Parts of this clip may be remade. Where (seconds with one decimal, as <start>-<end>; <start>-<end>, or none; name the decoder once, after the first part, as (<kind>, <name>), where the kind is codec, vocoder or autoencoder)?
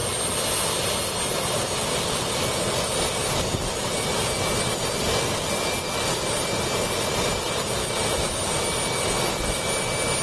none